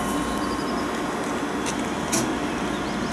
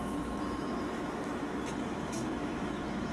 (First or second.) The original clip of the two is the first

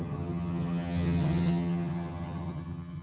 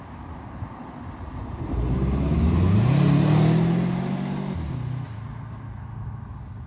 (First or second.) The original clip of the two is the second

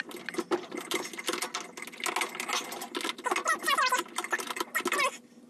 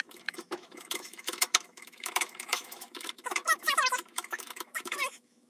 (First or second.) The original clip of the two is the first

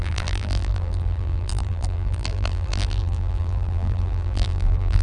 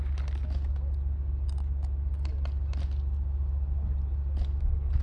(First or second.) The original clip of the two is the second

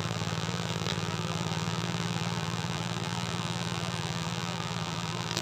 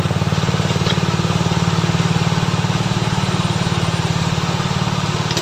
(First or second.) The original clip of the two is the second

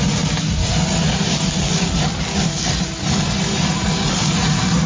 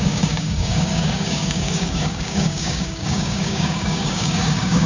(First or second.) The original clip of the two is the first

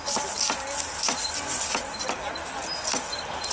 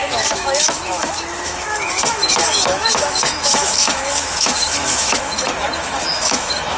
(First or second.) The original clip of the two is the first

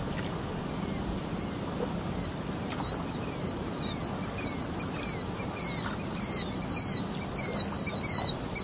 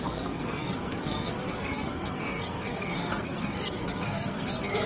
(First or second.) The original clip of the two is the first